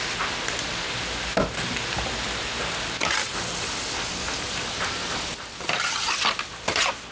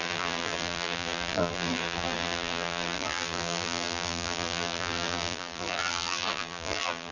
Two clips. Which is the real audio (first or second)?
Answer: first